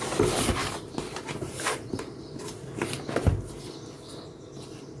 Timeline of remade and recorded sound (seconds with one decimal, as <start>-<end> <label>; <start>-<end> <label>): 0.0-0.6 recorded; 0.6-3.6 remade; 3.6-5.0 recorded